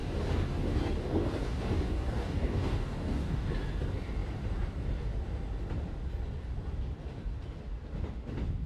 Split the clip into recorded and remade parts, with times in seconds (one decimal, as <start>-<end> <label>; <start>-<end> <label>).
0.0-3.5 remade; 3.5-8.7 recorded